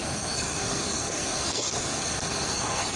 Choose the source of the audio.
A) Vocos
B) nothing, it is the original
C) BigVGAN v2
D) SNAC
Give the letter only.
D